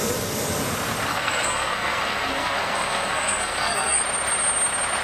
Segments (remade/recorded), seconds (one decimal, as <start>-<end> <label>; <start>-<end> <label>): 0.0-1.1 recorded; 1.1-4.0 remade; 4.0-5.0 recorded